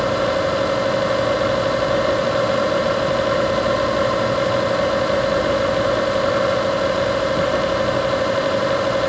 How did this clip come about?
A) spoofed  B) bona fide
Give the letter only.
B